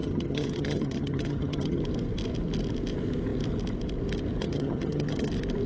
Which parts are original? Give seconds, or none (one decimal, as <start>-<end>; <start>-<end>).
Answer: 1.8-4.4; 5.3-5.7